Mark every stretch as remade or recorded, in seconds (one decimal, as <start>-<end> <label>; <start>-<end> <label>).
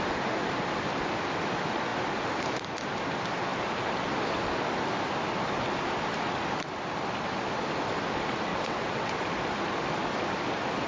0.0-8.5 recorded; 8.5-9.1 remade; 9.1-10.9 recorded